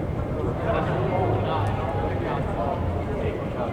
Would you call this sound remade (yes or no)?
no